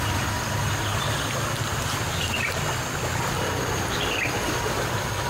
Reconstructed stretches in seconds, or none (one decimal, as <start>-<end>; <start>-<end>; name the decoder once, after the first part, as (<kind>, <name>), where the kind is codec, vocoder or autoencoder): none